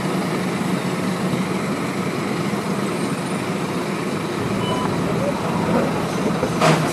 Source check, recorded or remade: recorded